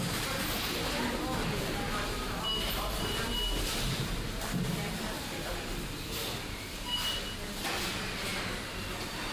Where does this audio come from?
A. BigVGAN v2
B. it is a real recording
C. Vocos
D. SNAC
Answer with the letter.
B